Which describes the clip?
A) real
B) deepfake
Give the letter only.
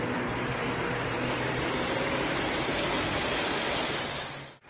A